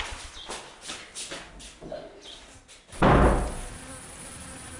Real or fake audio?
real